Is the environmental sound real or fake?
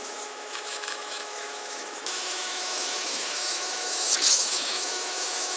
fake